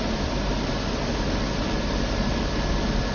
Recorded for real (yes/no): yes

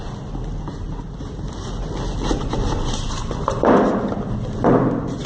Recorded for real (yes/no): yes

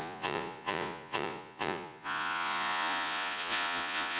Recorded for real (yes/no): no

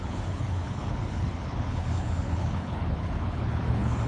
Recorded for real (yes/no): no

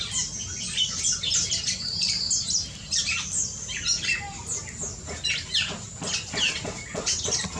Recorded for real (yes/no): yes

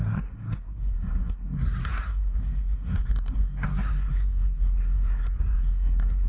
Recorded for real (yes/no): no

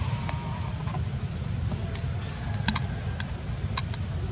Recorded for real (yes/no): yes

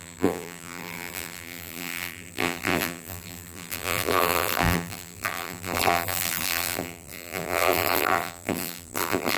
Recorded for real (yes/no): no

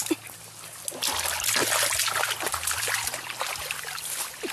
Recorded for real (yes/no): yes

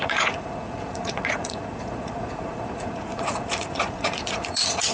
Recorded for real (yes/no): no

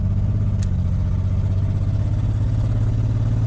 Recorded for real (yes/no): yes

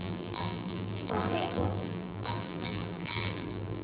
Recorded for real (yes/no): no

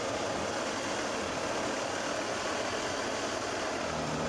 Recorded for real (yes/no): yes